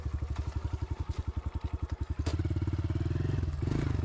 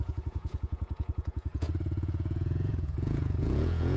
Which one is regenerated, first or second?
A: second